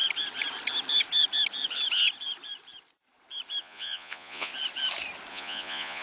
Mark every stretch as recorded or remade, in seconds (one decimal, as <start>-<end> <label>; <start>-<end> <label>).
0.0-3.6 recorded; 3.6-4.5 remade; 4.5-5.3 recorded; 5.3-6.0 remade